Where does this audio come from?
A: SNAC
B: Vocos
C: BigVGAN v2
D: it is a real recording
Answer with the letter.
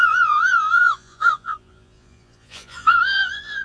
B